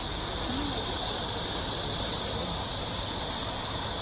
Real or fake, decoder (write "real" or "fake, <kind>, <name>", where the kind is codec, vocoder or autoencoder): real